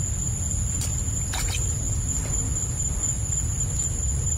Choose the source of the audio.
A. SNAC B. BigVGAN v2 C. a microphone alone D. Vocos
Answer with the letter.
C